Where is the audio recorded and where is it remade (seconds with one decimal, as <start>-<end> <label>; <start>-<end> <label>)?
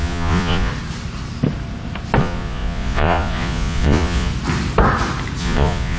0.0-0.7 remade; 0.7-2.2 recorded; 2.2-4.3 remade; 4.3-5.4 recorded; 5.4-6.0 remade